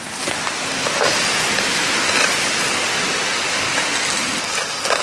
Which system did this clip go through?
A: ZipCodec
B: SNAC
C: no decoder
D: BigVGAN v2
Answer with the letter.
C